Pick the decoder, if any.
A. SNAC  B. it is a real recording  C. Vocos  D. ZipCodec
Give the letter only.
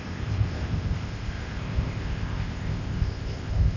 D